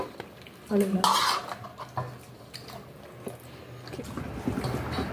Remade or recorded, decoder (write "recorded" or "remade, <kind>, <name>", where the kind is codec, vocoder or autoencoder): recorded